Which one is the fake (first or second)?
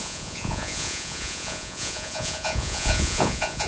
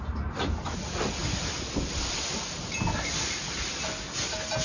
first